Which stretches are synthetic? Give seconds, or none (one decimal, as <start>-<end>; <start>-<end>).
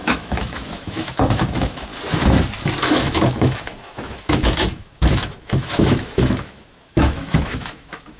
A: 0.0-1.9; 2.8-8.2